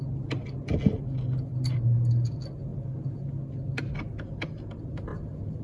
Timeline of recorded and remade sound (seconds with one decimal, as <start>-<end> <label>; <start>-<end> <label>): 0.0-5.1 recorded; 5.1-5.6 remade